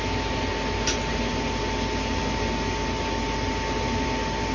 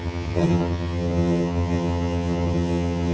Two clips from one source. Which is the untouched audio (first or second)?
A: first